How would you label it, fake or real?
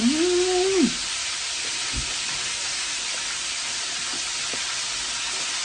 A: real